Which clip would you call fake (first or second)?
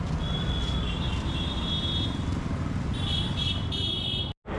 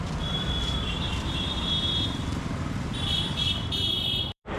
second